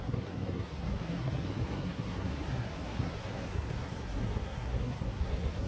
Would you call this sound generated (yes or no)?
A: yes